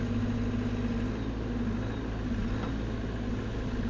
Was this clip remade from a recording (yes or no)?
no